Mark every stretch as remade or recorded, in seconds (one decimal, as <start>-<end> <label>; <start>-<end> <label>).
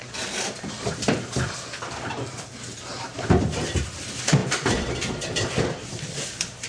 0.0-6.7 remade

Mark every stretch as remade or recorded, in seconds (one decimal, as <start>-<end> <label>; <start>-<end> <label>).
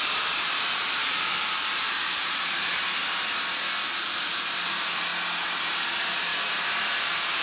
0.0-3.0 remade; 3.0-4.0 recorded; 4.0-5.1 remade; 5.1-5.6 recorded; 5.6-6.3 remade; 6.3-7.0 recorded; 7.0-7.4 remade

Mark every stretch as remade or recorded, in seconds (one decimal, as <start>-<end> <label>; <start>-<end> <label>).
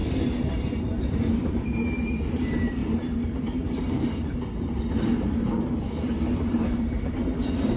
0.0-1.0 recorded; 1.0-7.8 remade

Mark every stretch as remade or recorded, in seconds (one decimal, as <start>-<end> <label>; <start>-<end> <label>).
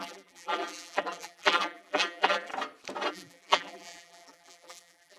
0.0-2.5 remade; 2.5-3.1 recorded; 3.1-5.2 remade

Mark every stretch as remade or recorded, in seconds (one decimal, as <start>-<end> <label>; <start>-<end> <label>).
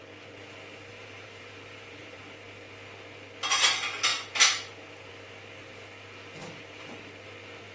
0.0-0.9 recorded; 0.9-2.2 remade; 2.2-6.4 recorded; 6.4-7.0 remade; 7.0-7.7 recorded